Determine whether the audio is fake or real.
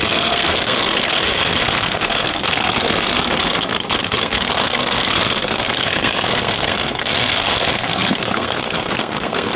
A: fake